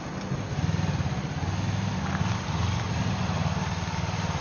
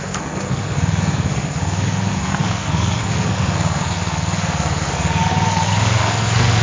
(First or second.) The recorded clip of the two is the first